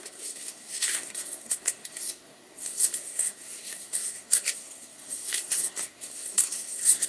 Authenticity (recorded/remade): remade